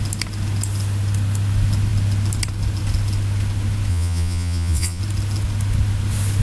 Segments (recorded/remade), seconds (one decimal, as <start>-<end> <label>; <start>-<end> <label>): 0.0-3.9 recorded; 3.9-5.0 remade; 5.0-6.4 recorded